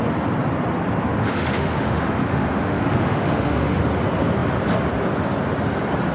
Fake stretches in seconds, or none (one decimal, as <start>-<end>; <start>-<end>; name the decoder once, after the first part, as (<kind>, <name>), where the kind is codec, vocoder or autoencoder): 1.2-3.8 (autoencoder, DAC-VAE)